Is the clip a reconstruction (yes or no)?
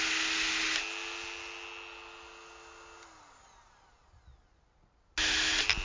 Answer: no